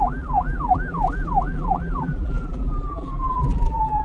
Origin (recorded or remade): remade